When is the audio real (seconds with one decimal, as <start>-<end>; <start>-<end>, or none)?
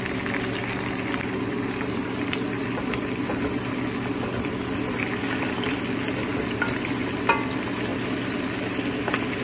0.0-9.4